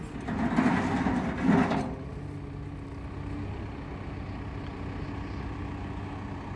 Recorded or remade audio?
recorded